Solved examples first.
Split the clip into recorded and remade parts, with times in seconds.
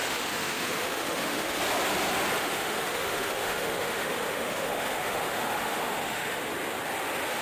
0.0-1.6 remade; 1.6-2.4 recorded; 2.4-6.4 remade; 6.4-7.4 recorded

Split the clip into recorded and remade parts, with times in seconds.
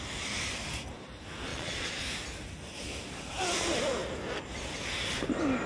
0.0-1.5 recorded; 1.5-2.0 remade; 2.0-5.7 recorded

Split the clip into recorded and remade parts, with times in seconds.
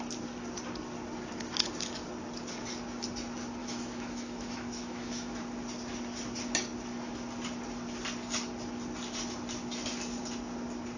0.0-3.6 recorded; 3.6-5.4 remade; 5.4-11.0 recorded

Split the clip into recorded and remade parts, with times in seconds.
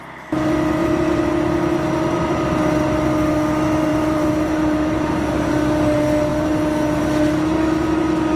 0.0-0.8 recorded; 0.8-1.3 remade; 1.3-3.9 recorded; 3.9-5.5 remade; 5.5-8.4 recorded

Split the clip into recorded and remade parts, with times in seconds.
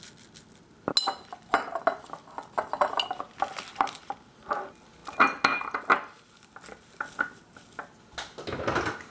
0.0-9.1 recorded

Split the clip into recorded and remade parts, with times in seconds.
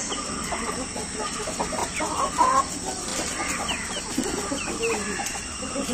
0.0-5.9 recorded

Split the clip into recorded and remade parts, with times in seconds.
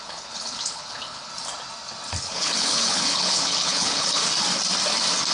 0.0-1.3 remade; 1.3-2.2 recorded; 2.2-4.2 remade; 4.2-5.3 recorded